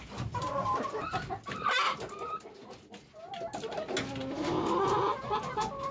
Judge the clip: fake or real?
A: real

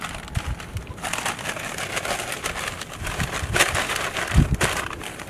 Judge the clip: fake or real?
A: real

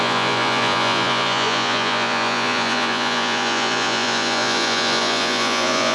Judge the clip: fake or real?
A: fake